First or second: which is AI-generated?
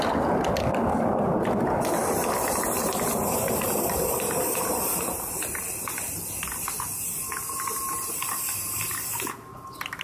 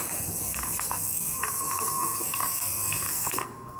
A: second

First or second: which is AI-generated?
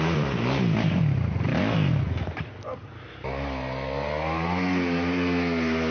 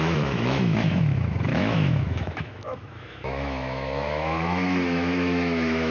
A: second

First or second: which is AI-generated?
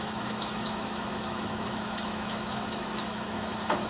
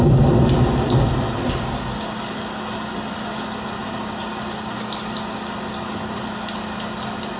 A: first